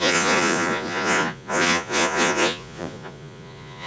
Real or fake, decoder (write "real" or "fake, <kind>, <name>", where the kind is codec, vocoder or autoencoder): fake, vocoder, Vocos